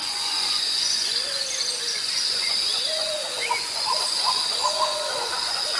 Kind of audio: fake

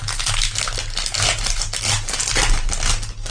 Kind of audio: real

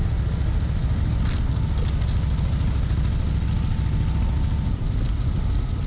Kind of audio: real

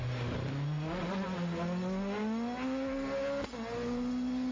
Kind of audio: real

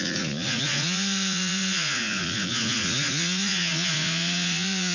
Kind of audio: fake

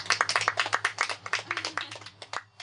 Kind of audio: real